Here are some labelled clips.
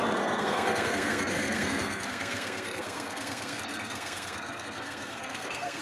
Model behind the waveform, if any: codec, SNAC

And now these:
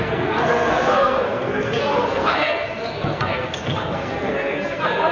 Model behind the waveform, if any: codec, SNAC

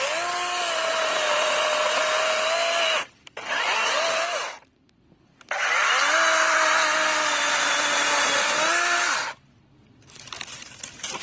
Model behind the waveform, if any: none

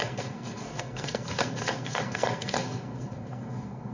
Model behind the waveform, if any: codec, SNAC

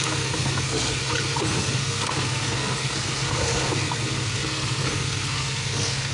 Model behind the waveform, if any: codec, SNAC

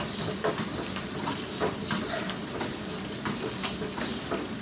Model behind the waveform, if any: none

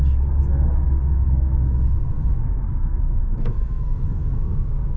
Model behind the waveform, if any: codec, SNAC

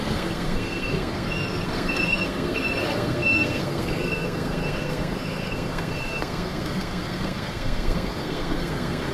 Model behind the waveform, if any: codec, SNAC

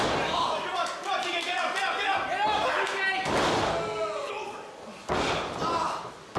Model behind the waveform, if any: none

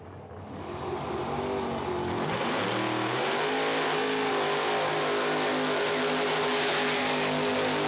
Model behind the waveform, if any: none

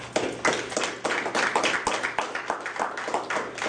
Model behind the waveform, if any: none